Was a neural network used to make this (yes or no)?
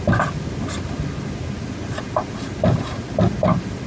no